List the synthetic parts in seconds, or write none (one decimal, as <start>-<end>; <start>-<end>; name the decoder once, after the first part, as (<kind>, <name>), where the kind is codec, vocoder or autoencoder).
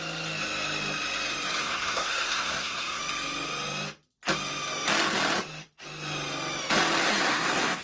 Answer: 1.6-3.0 (codec, SNAC); 7.0-7.8